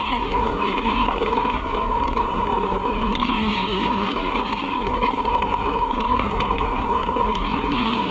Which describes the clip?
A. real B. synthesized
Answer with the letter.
B